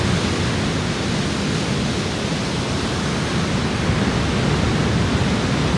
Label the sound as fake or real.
real